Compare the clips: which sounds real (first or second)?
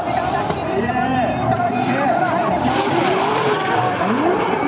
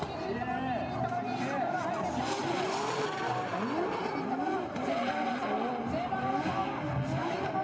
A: second